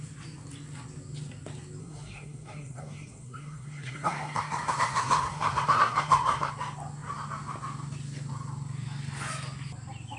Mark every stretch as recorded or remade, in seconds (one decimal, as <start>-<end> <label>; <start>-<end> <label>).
0.0-1.8 recorded; 1.8-6.5 remade; 6.5-10.2 recorded